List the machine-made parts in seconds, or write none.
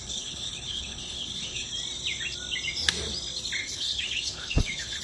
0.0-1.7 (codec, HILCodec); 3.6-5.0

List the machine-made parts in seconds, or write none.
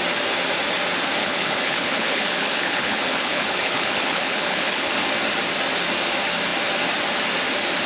1.2-5.1 (codec, HILCodec)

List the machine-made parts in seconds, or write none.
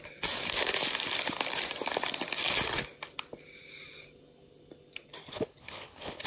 5.2-6.3 (codec, HILCodec)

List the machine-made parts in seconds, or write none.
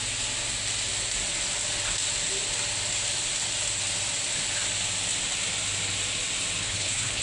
6.6-7.2 (codec, HILCodec)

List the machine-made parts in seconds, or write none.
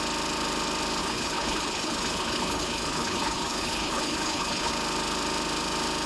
1.0-4.7 (codec, HILCodec)